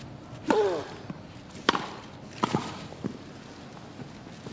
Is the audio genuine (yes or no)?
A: yes